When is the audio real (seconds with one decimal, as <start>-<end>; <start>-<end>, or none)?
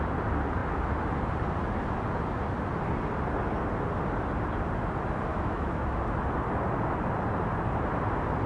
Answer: 0.0-5.3; 6.0-8.5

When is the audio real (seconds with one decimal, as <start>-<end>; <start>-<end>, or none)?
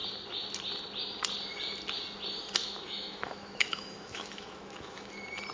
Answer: 0.0-2.6; 5.1-5.5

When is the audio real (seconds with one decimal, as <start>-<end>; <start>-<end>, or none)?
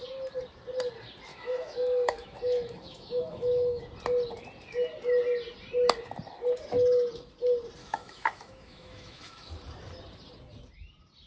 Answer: 0.0-1.3; 3.8-7.8; 9.5-11.3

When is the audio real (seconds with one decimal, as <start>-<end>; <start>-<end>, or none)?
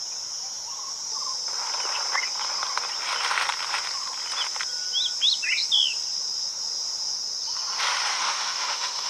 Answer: 0.0-8.1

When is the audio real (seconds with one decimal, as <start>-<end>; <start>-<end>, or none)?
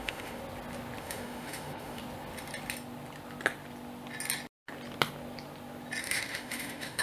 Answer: 0.4-1.0; 2.0-6.0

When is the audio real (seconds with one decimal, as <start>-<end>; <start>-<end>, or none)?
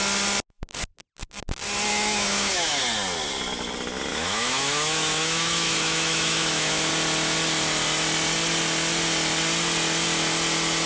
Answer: 0.0-1.9; 2.8-4.1; 6.9-10.9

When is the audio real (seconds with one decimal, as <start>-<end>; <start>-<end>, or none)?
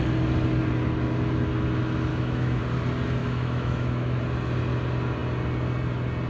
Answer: 0.0-2.1; 2.6-3.2; 4.2-6.3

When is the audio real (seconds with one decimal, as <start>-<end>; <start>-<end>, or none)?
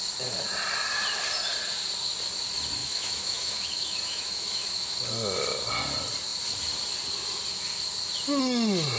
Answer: 0.0-2.8; 5.1-9.0